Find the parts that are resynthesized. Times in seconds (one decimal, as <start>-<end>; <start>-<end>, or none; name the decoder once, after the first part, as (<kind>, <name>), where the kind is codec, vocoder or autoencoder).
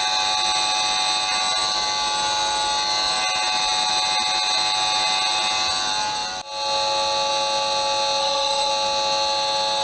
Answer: 8.2-8.7 (codec, SNAC)